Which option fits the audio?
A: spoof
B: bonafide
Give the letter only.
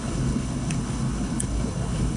A